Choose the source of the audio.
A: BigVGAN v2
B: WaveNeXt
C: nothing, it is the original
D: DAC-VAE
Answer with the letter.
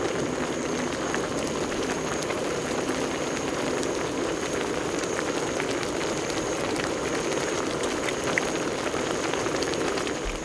A